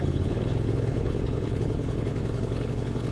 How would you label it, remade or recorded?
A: remade